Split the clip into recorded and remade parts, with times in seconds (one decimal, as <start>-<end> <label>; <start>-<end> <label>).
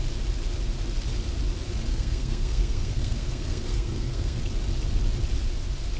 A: 0.0-1.9 recorded; 1.9-4.4 remade; 4.4-6.0 recorded